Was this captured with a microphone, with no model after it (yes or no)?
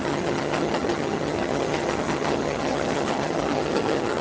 no